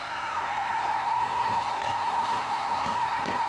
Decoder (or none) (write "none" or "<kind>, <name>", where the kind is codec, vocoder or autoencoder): codec, SNAC